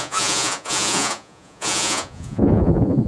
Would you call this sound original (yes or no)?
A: no